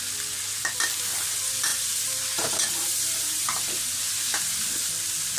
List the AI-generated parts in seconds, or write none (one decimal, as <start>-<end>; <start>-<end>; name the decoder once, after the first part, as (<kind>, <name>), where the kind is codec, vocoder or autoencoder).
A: 1.7-4.9 (vocoder, BigVGAN v2)